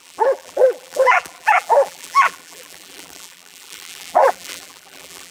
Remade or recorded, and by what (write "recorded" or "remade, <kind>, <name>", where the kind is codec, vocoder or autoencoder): remade, vocoder, BigVGAN v2